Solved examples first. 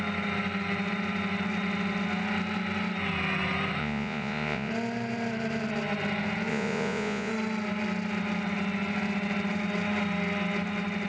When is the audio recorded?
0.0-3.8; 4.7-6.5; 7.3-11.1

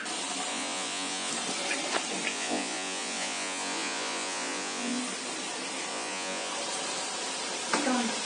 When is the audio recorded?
0.0-0.5; 1.3-2.3; 5.0-5.9; 6.5-8.2

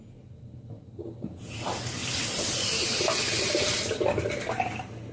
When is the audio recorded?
0.0-5.1

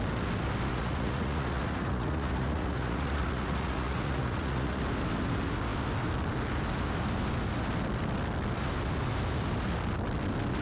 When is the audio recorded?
0.0-0.7; 4.8-10.6